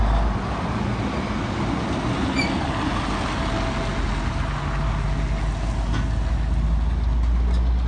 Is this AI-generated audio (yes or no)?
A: no